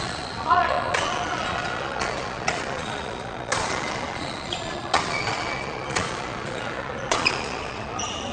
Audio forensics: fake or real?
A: fake